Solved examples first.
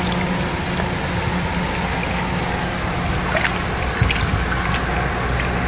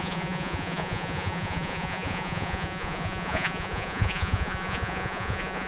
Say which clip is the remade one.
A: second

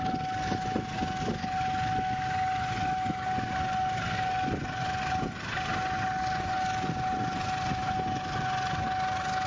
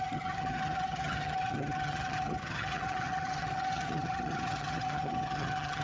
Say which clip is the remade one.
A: second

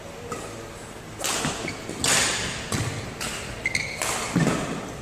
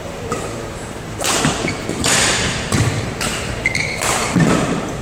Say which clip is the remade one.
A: second